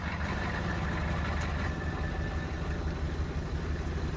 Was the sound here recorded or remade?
recorded